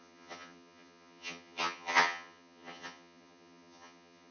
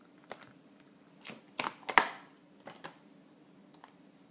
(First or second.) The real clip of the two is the second